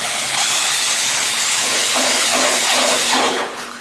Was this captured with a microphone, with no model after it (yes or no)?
no